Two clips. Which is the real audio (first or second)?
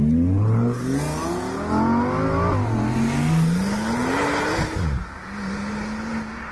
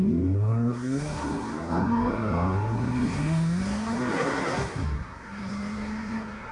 first